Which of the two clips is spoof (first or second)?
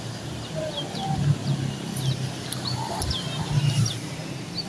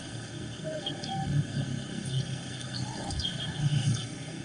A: second